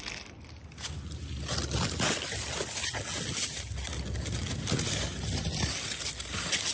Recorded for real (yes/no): yes